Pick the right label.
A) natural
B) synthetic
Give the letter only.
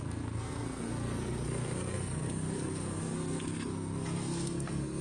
B